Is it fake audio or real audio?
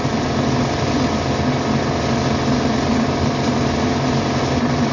real